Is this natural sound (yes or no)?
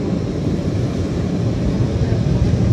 yes